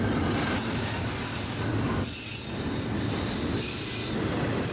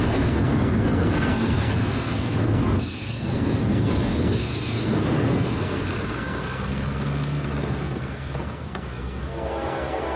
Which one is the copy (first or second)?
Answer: second